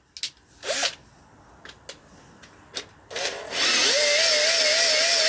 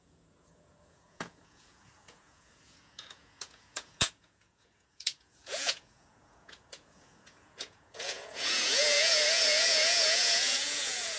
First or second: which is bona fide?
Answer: first